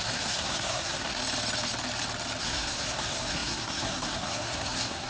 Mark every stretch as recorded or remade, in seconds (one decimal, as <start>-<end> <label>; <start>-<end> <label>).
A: 0.0-1.2 remade; 1.2-2.4 recorded; 2.4-5.1 remade